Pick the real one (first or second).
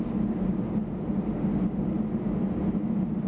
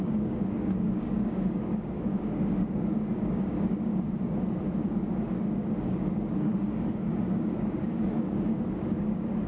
first